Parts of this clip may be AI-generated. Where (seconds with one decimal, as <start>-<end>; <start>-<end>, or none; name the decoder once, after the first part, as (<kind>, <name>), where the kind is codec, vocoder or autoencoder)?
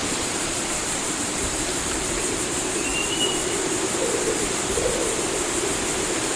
0.0-2.4 (vocoder, BigVGAN v2); 2.9-4.9